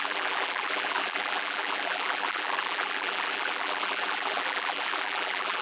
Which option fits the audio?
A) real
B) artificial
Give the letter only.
B